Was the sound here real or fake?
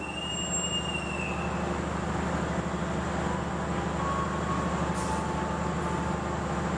real